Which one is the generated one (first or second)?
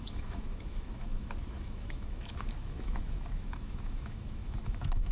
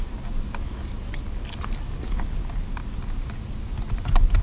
first